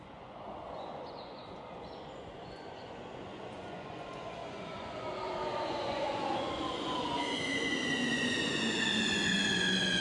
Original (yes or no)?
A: no